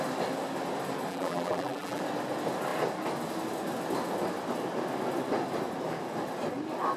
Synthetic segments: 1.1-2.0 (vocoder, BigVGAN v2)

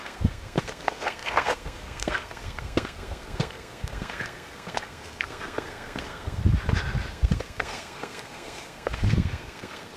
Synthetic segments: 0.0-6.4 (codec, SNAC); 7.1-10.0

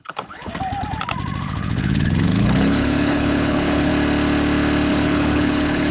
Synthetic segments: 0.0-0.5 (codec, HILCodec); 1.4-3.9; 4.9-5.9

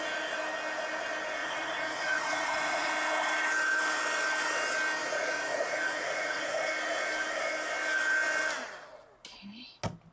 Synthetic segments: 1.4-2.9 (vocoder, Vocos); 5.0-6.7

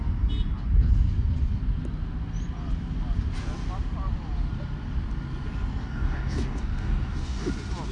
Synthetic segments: 5.8-7.5 (codec, DAC)

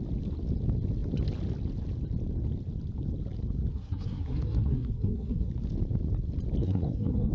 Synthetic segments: 3.7-5.5 (codec, SNAC); 6.6-7.3

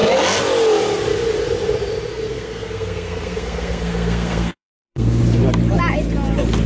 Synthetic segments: 2.1-5.2 (codec, SNAC)

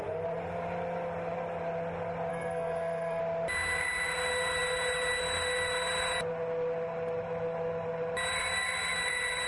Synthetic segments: 2.3-3.2 (codec, SNAC)